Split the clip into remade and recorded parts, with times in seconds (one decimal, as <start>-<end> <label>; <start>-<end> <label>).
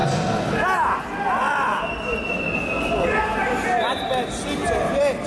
0.0-5.3 recorded